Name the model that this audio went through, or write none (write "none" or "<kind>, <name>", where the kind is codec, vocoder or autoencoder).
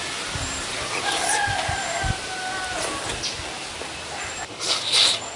none